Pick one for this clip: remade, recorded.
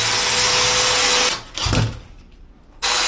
recorded